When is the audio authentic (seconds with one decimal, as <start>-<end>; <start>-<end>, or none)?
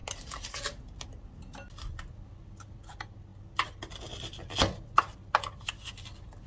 0.0-6.5